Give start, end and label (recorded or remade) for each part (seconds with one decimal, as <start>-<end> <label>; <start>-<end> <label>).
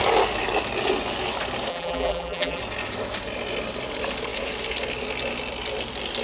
0.0-1.7 recorded; 1.7-2.6 remade; 2.6-6.2 recorded